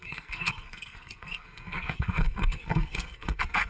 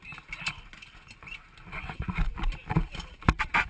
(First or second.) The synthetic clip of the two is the first